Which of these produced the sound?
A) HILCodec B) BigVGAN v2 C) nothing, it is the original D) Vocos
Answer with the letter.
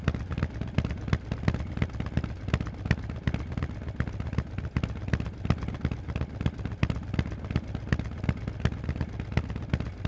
C